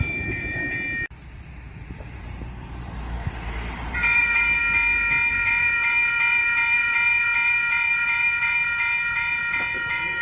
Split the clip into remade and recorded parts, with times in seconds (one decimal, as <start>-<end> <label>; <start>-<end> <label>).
0.0-0.6 remade; 0.6-1.9 recorded; 1.9-4.6 remade; 4.6-5.3 recorded; 5.3-10.2 remade